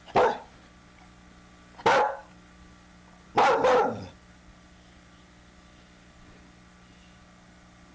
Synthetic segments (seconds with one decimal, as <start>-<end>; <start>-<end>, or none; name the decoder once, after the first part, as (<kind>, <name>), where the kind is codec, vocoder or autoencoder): none